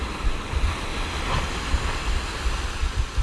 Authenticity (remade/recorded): recorded